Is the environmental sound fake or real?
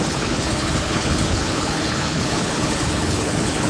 fake